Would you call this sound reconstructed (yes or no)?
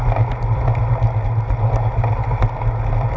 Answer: no